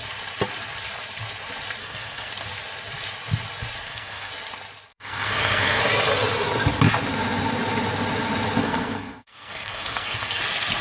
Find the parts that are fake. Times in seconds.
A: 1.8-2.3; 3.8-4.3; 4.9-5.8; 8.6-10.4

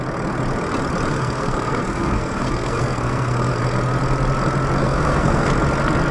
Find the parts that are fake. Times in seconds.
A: 1.1-3.6; 4.8-5.5

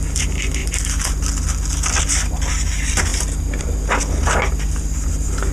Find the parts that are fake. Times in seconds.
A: none

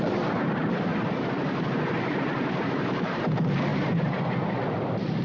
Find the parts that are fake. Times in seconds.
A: 0.0-5.2